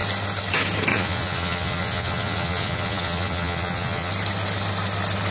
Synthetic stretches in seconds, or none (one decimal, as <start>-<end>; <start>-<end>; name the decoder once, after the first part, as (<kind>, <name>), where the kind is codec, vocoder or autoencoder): 0.9-4.1 (vocoder, Vocos)